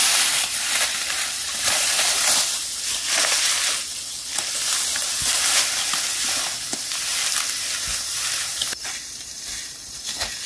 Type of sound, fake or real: real